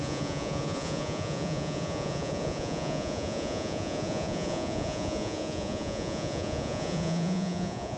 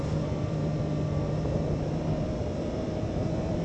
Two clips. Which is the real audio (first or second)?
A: second